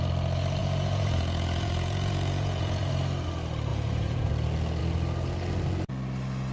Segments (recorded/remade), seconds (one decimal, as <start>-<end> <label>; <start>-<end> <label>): 0.0-0.6 recorded; 0.6-2.9 remade; 2.9-3.7 recorded; 3.7-4.3 remade; 4.3-6.5 recorded